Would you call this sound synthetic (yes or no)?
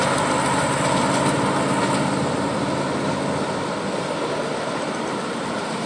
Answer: no